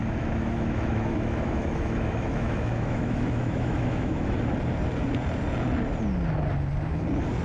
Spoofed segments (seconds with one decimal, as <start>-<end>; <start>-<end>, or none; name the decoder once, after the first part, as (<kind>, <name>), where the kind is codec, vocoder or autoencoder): 0.0-4.4 (autoencoder, DAC-VAE)